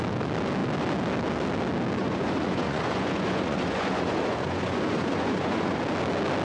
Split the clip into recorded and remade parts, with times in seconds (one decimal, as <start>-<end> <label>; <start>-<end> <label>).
0.0-2.0 recorded; 2.0-5.8 remade; 5.8-6.4 recorded